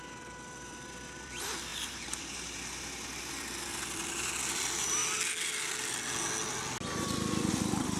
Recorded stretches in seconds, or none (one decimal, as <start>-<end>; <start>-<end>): 5.0-7.5

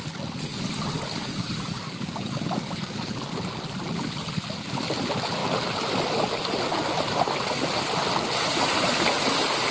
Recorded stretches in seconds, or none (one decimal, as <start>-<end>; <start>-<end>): 0.0-1.1; 3.1-9.7

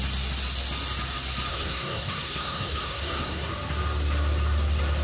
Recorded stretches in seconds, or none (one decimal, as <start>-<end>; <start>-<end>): 0.0-1.5; 3.5-5.0

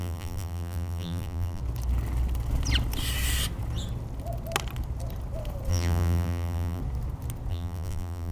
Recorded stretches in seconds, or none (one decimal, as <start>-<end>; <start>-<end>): 1.6-5.7; 6.8-7.5

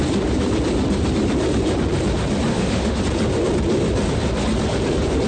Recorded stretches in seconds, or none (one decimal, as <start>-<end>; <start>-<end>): 0.0-2.5; 3.0-5.3

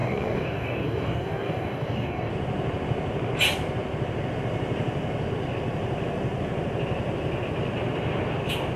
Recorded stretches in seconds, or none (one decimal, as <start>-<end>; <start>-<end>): 2.3-8.8

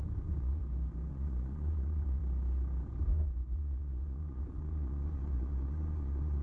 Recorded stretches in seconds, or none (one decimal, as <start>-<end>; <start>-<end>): 0.6-1.1; 2.2-3.0